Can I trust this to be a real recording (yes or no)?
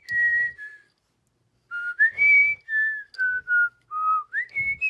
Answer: yes